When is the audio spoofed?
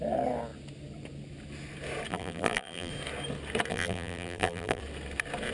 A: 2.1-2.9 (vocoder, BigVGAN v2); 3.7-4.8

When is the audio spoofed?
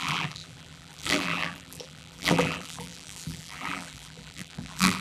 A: 0.0-5.0 (vocoder, BigVGAN v2)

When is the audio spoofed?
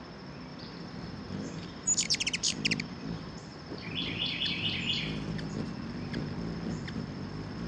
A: 0.5-4.4 (vocoder, BigVGAN v2)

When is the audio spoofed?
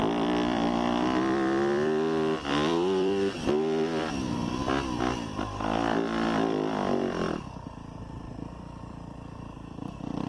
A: 0.0-4.6 (vocoder, BigVGAN v2); 5.1-10.3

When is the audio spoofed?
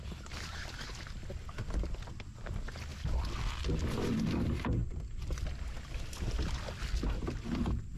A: 4.8-5.4 (vocoder, BigVGAN v2)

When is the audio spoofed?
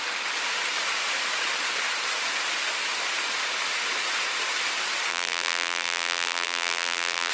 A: 5.1-7.3 (vocoder, BigVGAN v2)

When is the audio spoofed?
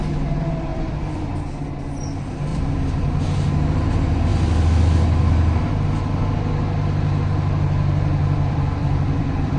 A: 0.7-1.3 (vocoder, BigVGAN v2); 2.5-3.2; 8.2-9.6